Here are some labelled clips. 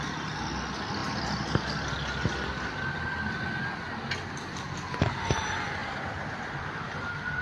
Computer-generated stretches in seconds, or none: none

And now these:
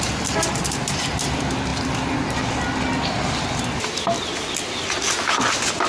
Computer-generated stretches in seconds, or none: none

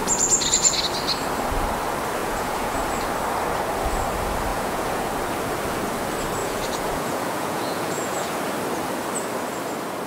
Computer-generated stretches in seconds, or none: 2.2-2.8 (vocoder, Vocos); 4.5-5.1; 6.4-8.3